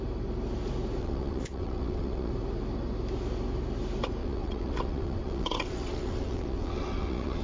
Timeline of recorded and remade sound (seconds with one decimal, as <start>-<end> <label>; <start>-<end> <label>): 0.0-1.0 recorded; 1.0-2.3 remade; 2.3-4.2 recorded; 4.2-7.4 remade